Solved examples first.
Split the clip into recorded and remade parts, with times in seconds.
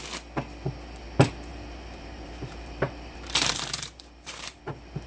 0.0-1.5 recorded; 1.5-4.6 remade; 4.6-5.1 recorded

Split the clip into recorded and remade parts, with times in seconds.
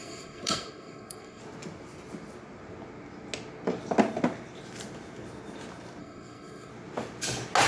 0.0-1.4 remade; 1.4-6.0 recorded; 6.0-6.7 remade; 6.7-7.7 recorded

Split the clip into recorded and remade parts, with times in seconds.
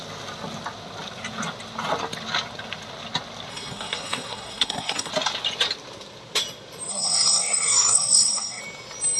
0.0-3.5 recorded; 3.5-5.1 remade; 5.1-6.9 recorded; 6.9-8.6 remade; 8.6-9.2 recorded